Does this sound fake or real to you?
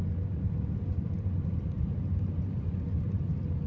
real